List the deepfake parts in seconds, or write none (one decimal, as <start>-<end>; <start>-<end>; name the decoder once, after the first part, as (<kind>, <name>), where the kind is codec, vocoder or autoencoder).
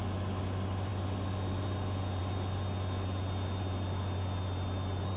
none